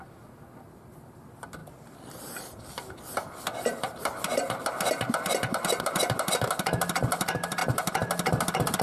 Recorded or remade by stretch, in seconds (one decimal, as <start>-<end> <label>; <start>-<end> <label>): 0.0-8.8 recorded